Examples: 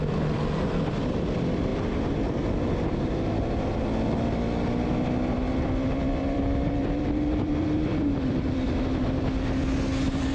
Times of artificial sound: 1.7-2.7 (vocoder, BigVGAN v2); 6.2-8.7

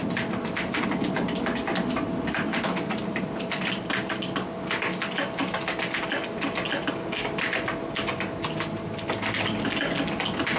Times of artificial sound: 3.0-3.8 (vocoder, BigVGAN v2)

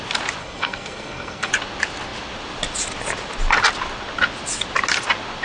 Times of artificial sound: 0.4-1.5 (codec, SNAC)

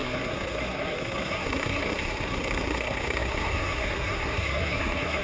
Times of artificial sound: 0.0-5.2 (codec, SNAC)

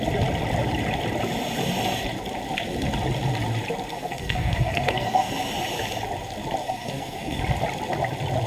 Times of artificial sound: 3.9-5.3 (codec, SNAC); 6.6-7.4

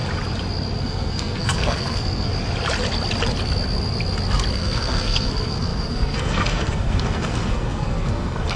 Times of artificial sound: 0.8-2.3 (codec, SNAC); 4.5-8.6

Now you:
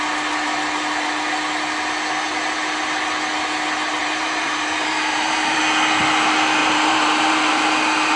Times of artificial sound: 4.0-5.6 (vocoder, BigVGAN v2); 6.6-7.6

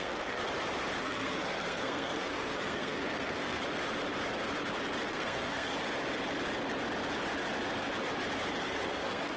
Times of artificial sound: 0.0-0.4 (codec, SNAC); 1.0-3.6; 5.1-5.7; 8.7-9.4